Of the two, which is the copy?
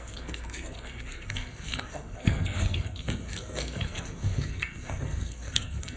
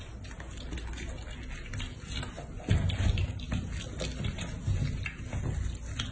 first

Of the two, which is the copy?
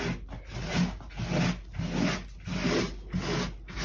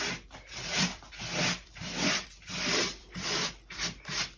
second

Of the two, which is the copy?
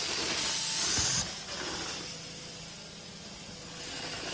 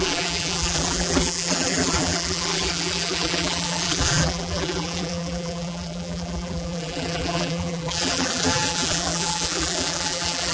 second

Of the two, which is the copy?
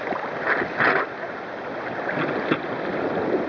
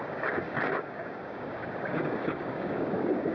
second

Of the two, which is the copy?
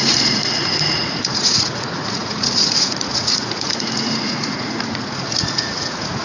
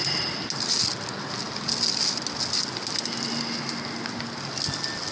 first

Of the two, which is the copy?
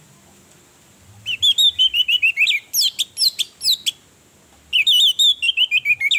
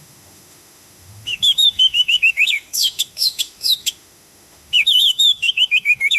second